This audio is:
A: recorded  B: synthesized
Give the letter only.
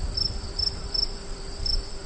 A